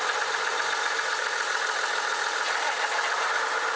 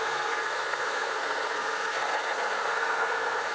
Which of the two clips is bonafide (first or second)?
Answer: first